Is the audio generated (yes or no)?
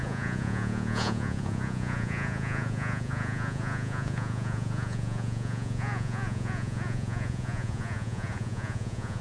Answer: yes